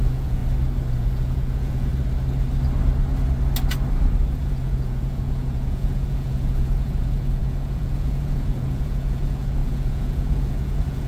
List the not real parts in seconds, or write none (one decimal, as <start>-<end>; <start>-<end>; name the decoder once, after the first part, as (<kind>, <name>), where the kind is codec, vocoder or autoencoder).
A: 0.0-0.4 (vocoder, Vocos); 0.9-1.9; 4.4-11.1